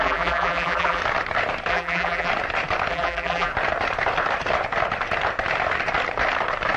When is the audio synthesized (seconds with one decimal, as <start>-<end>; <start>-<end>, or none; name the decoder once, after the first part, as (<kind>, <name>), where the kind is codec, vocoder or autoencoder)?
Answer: 0.0-1.0 (vocoder, BigVGAN v2); 1.7-2.3; 2.9-3.5